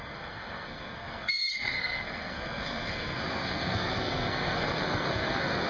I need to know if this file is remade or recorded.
remade